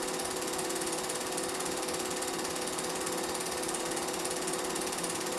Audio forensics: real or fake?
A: real